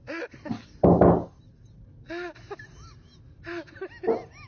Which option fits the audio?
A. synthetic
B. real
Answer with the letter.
B